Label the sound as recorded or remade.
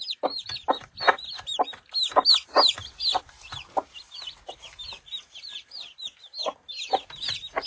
recorded